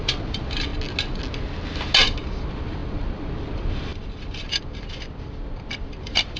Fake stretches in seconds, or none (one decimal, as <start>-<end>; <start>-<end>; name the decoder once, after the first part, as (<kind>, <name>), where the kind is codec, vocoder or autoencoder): 0.0-0.7 (vocoder, BigVGAN v2); 2.3-6.4